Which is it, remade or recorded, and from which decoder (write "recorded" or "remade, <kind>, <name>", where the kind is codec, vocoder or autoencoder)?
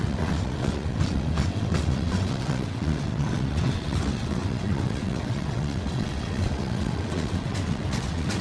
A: remade, vocoder, WaveNeXt